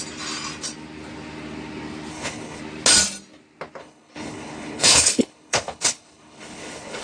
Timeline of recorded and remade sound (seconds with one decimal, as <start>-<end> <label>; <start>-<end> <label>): 0.0-2.1 recorded; 2.1-2.6 remade; 2.6-3.8 recorded; 3.8-7.0 remade